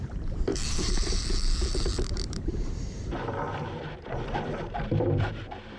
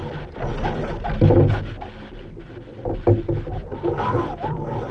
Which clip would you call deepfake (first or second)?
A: first